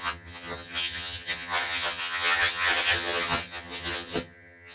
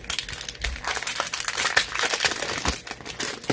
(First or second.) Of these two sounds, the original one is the second